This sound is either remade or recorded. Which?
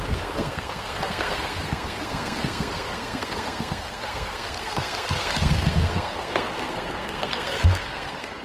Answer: remade